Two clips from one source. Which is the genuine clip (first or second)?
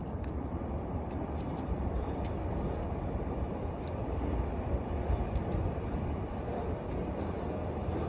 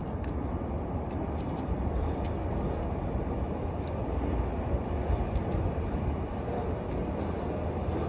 second